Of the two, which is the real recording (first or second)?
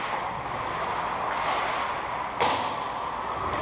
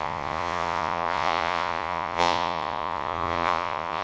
first